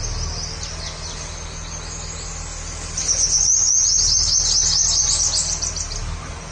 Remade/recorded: recorded